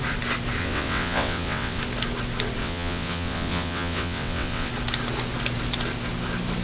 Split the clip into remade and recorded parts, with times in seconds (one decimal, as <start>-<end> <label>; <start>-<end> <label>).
0.0-0.6 recorded; 0.6-1.8 remade; 1.8-2.6 recorded; 2.6-4.7 remade; 4.7-6.6 recorded